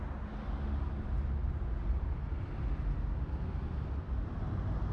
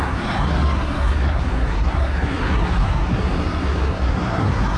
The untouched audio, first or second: first